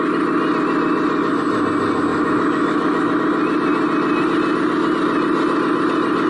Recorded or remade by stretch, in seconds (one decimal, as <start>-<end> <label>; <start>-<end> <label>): 0.0-2.1 recorded; 2.1-3.1 remade; 3.1-6.3 recorded